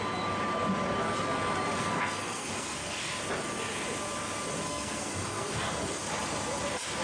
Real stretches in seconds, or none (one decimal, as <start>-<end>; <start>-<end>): 0.0-1.8; 3.1-4.7; 5.9-7.0